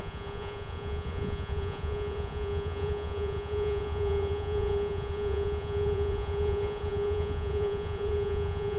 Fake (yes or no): yes